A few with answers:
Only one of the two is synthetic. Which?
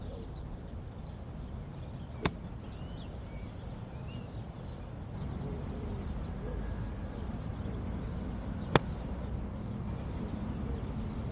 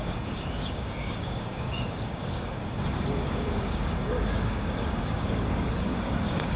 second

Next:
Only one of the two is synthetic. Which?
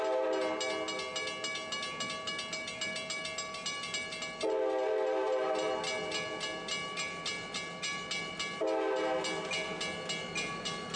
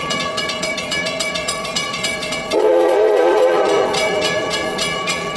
second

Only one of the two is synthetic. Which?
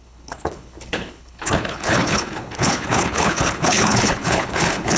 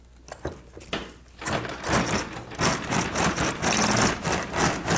first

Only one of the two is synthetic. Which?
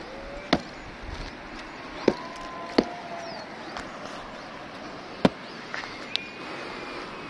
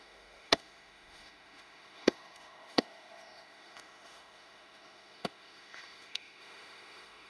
second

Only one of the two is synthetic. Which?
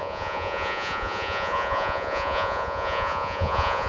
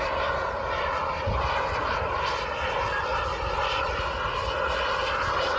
first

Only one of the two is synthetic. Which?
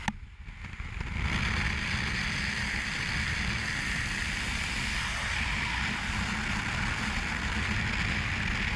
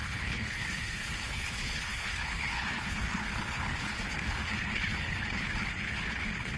second